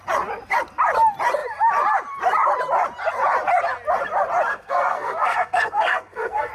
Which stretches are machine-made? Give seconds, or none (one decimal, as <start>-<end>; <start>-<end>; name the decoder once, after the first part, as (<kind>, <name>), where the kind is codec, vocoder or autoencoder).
4.5-6.5 (codec, SNAC)